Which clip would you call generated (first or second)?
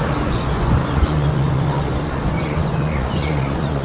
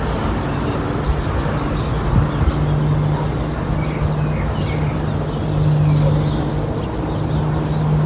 first